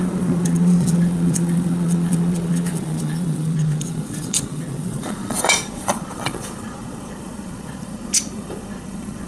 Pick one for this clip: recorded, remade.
remade